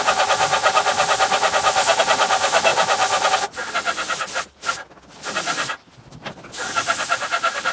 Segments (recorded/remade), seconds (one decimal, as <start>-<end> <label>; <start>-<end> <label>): 0.0-7.7 recorded